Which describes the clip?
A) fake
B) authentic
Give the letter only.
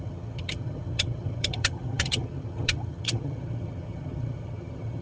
A